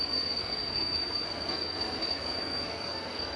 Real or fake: fake